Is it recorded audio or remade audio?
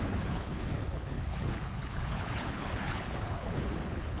remade